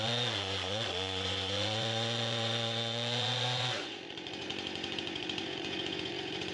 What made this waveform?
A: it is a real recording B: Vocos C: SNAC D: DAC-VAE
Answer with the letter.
B